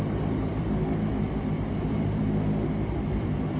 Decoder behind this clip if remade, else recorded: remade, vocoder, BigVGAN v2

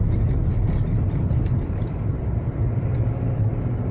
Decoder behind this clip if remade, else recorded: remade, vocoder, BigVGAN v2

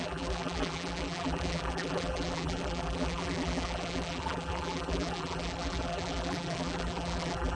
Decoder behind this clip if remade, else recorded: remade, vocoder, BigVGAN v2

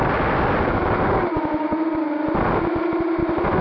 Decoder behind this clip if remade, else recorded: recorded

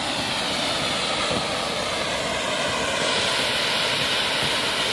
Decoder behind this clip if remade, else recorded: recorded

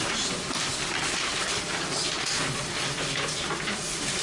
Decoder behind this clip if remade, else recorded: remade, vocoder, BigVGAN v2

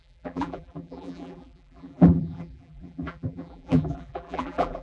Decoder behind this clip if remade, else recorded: remade, vocoder, BigVGAN v2